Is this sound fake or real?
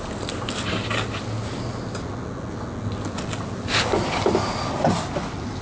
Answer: real